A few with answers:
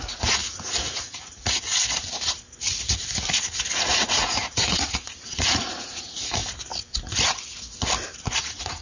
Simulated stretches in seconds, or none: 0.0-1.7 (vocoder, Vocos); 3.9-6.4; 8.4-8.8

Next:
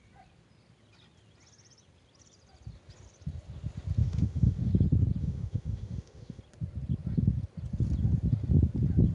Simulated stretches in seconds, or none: 4.0-4.7 (autoencoder, DAC-VAE); 5.2-6.4

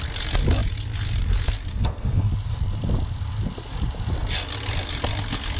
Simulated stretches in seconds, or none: 1.7-2.3 (codec, SNAC)